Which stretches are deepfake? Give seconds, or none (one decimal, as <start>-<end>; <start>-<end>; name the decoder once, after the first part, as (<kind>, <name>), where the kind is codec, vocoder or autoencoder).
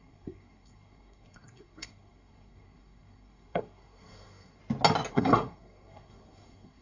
0.0-4.6 (codec, SNAC); 5.1-6.8